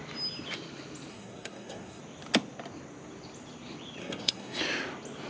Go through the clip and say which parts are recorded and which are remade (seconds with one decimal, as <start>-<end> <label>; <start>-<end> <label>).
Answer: 0.0-1.1 recorded; 1.1-2.0 remade; 2.0-4.0 recorded; 4.0-4.6 remade; 4.6-5.3 recorded